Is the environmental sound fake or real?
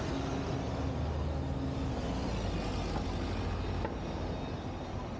real